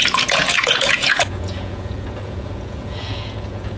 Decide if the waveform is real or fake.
fake